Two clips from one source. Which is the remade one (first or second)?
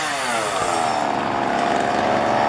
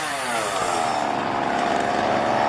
second